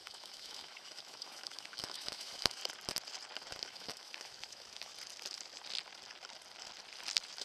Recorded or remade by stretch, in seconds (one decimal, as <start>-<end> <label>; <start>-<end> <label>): 0.0-2.6 remade; 2.6-3.7 recorded; 3.7-4.9 remade; 4.9-7.4 recorded